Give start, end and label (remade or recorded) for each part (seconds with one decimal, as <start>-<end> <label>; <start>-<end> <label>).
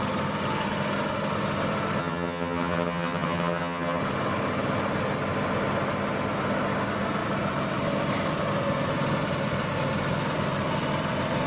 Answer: 0.0-2.0 recorded; 2.0-4.0 remade; 4.0-11.5 recorded